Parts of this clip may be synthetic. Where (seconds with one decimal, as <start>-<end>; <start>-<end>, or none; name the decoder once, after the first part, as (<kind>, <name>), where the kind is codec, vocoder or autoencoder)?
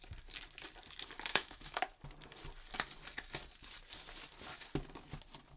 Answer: 1.3-1.8 (autoencoder, DAC-VAE)